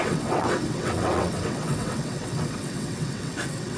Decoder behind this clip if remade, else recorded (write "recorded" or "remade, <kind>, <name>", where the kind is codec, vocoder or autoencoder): remade, vocoder, WaveNeXt